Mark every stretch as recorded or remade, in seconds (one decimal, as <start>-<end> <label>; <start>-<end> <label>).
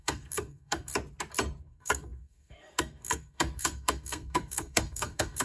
0.0-0.9 remade; 0.9-1.6 recorded; 1.6-5.4 remade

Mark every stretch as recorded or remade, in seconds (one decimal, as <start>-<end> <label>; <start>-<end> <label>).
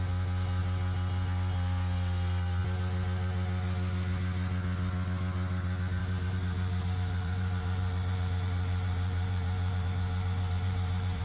0.0-6.0 recorded; 6.0-11.2 remade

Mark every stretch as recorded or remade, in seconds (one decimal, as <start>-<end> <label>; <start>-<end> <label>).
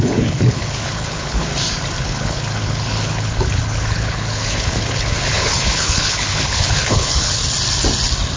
0.0-1.5 remade; 1.5-2.0 recorded; 2.0-7.4 remade; 7.4-8.4 recorded